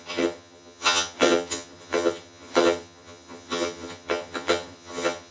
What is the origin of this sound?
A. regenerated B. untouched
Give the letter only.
A